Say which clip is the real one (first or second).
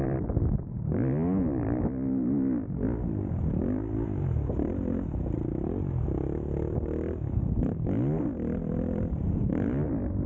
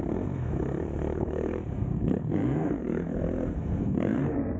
first